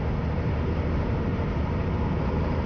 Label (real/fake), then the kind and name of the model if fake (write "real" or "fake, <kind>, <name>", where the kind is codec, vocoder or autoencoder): fake, vocoder, BigVGAN v2